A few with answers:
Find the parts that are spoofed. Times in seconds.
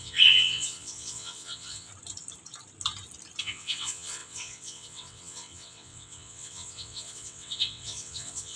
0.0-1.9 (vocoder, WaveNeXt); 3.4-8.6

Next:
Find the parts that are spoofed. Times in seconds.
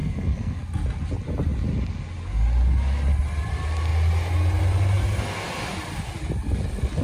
0.0-0.6 (codec, SNAC)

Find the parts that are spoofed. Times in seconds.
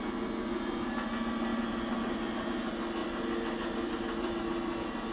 1.5-2.5 (vocoder, BigVGAN v2); 3.0-4.4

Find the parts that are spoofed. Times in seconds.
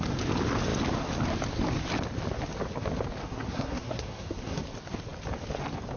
3.2-4.6 (codec, SNAC)